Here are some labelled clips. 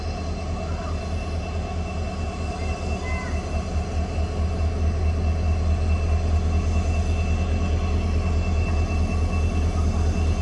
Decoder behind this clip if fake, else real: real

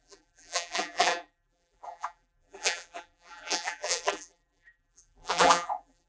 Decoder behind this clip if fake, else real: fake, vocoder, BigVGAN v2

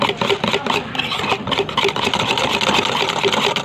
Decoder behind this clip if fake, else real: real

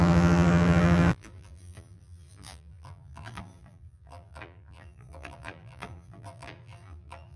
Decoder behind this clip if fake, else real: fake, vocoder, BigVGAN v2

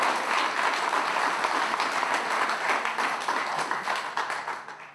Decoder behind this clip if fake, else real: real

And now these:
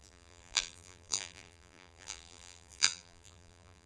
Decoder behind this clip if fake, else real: fake, vocoder, BigVGAN v2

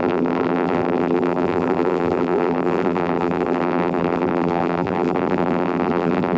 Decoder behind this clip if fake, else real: fake, vocoder, BigVGAN v2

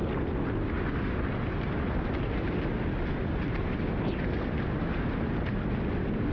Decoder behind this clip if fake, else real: real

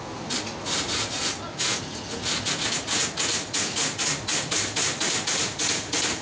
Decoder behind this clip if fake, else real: fake, vocoder, BigVGAN v2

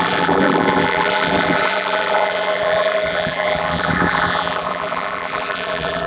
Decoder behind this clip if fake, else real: fake, vocoder, BigVGAN v2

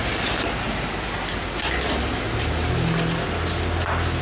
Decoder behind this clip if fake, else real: real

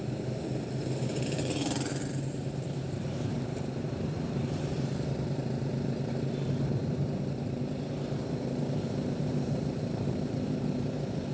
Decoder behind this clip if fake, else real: fake, vocoder, BigVGAN v2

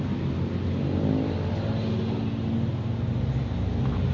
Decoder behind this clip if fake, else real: real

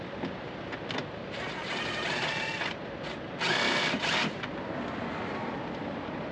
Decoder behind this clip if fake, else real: real